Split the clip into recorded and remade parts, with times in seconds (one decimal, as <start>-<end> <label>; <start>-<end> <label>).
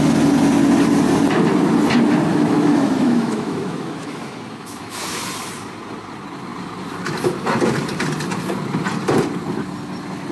0.0-2.3 recorded; 2.3-5.2 remade; 5.2-10.3 recorded